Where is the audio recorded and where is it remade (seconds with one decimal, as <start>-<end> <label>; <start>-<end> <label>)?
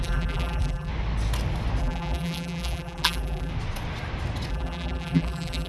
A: 0.0-0.9 remade; 0.9-1.8 recorded; 1.8-3.5 remade; 3.5-4.5 recorded; 4.5-5.7 remade